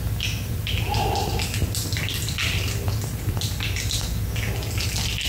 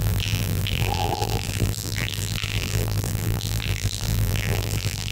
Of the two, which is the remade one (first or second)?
second